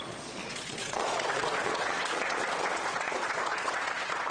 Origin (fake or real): fake